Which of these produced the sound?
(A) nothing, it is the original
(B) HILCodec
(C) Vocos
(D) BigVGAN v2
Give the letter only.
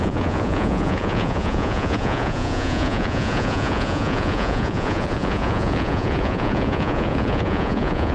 C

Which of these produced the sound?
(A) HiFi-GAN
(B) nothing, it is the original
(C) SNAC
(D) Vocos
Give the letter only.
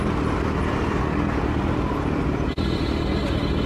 B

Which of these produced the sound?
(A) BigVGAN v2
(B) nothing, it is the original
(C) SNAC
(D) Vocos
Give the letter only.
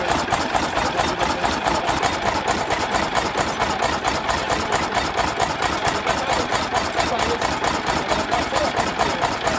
B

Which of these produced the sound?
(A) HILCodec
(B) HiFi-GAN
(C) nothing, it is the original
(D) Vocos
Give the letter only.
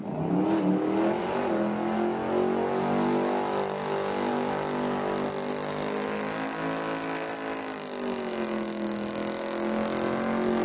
C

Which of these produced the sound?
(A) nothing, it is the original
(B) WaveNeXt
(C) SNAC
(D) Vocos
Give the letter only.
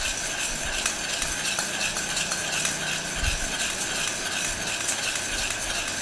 A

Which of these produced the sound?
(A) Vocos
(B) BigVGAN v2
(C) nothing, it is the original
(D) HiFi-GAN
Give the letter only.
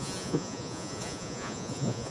A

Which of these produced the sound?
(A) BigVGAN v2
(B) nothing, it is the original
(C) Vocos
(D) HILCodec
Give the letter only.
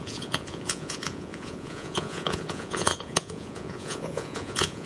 C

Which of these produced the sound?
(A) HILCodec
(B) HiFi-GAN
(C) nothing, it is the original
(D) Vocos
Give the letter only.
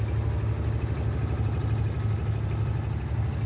C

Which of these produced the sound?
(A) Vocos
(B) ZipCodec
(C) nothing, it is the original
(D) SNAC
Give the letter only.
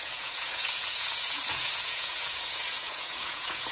A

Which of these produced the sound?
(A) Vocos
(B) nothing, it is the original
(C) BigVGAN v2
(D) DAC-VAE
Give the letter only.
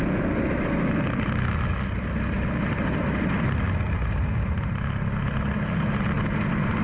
B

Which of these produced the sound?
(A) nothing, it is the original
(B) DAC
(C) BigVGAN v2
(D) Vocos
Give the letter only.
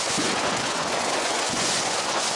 D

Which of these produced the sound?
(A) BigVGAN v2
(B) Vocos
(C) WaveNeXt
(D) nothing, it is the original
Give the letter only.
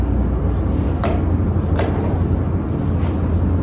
D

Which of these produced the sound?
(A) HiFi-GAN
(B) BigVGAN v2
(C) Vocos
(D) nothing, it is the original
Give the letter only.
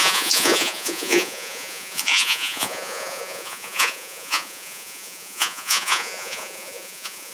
C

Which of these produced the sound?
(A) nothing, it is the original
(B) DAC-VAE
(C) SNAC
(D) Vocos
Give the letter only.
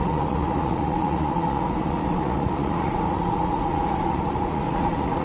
D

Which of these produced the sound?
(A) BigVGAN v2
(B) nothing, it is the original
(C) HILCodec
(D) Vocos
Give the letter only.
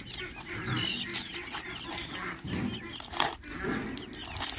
B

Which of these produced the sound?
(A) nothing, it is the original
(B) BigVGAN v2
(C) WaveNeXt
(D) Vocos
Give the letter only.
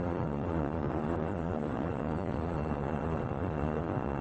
D